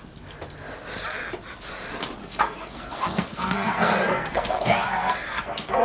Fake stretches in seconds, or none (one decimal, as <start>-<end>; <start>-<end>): 2.2-5.8